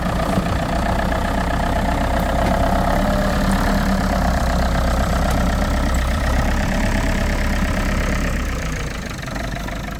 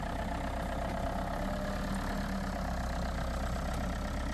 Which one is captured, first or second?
second